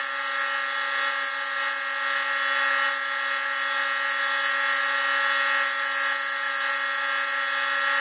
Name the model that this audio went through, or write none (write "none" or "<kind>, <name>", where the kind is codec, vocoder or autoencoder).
none